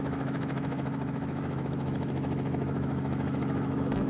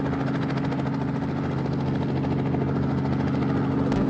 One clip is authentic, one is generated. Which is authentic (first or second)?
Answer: second